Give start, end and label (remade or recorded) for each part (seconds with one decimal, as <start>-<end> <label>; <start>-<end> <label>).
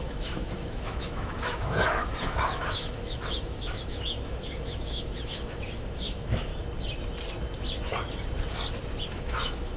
0.0-6.5 remade; 6.5-9.1 recorded; 9.1-9.8 remade